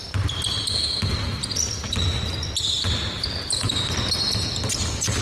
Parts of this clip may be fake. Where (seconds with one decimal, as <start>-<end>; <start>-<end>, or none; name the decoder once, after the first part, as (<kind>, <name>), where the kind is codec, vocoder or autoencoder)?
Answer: none